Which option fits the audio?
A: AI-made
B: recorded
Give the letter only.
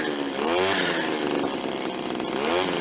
B